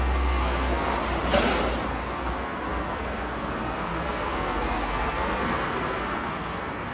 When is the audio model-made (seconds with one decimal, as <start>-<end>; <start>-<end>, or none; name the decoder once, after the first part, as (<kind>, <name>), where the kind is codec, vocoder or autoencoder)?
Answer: 0.0-0.9 (codec, SNAC); 1.9-6.9